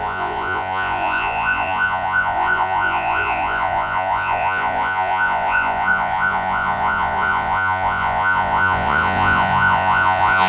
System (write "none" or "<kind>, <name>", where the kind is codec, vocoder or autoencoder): vocoder, Vocos